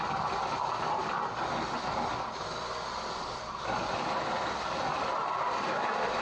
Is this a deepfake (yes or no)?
no